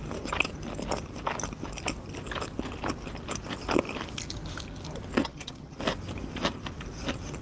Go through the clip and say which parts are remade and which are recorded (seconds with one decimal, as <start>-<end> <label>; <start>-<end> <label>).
0.0-5.2 recorded; 5.2-5.8 remade; 5.8-7.4 recorded

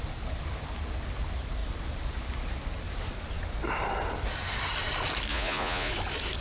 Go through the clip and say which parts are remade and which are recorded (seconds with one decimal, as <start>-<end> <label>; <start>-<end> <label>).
0.0-5.3 recorded; 5.3-5.9 remade; 5.9-6.4 recorded

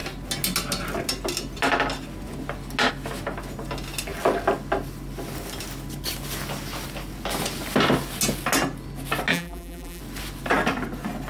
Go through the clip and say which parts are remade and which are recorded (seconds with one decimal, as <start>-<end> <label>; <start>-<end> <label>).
0.0-9.3 recorded; 9.3-10.0 remade; 10.0-11.3 recorded

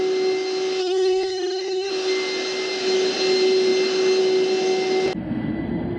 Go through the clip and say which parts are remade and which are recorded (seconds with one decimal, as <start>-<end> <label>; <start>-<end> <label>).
0.0-0.8 recorded; 0.8-1.9 remade; 1.9-6.0 recorded

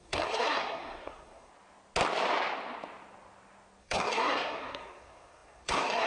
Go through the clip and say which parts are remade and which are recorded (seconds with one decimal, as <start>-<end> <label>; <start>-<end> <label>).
0.0-1.5 remade; 1.5-3.8 recorded; 3.8-6.1 remade